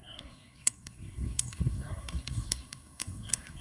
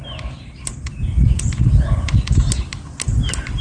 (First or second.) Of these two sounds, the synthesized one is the first